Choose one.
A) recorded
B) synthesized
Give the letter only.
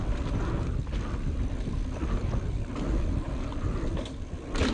A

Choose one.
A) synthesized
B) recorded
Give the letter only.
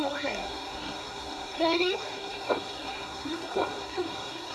A